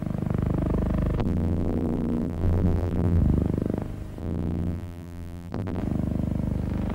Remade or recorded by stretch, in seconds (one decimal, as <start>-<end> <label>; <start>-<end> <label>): 0.0-1.2 recorded; 1.2-3.2 remade; 3.2-4.2 recorded; 4.2-5.8 remade; 5.8-6.9 recorded